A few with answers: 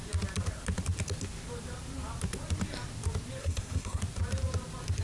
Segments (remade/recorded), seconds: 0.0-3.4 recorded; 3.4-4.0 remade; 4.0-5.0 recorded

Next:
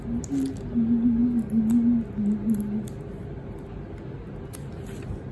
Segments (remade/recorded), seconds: 0.0-5.3 recorded

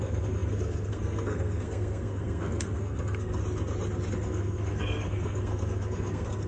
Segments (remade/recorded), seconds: 0.0-3.4 remade; 3.4-4.1 recorded; 4.1-6.5 remade